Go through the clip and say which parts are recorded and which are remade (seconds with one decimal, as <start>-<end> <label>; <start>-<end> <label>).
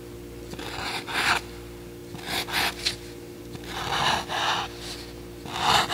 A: 0.0-5.9 recorded